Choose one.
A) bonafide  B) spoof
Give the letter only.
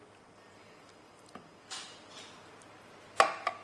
A